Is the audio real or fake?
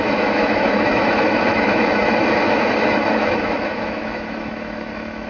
fake